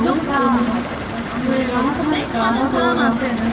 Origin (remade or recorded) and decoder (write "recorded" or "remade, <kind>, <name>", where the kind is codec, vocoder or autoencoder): recorded